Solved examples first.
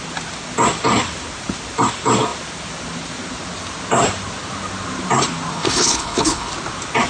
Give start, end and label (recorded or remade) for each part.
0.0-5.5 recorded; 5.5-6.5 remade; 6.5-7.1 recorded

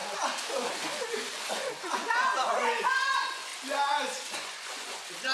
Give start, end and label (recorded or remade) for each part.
0.0-0.7 recorded; 0.7-3.5 remade; 3.5-4.3 recorded; 4.3-5.3 remade

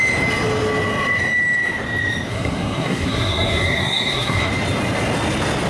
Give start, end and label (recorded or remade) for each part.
0.0-2.3 recorded; 2.3-4.5 remade; 4.5-5.7 recorded

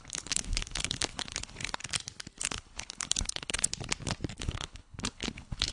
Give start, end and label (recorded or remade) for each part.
0.0-1.8 remade; 1.8-2.4 recorded; 2.4-3.7 remade; 3.7-4.4 recorded; 4.4-5.7 remade

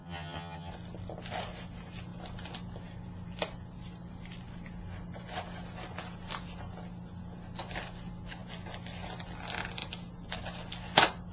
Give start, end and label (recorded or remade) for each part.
0.0-0.7 remade; 0.7-11.3 recorded